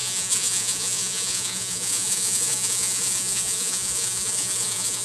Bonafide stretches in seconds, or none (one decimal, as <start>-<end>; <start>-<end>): none